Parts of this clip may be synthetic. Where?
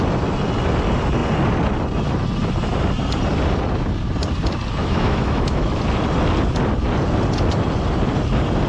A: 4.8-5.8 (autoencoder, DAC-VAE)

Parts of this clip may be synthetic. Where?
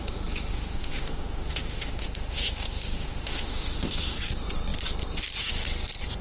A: 0.5-4.2 (autoencoder, DAC-VAE)